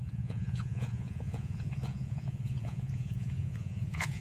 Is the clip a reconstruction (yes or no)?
yes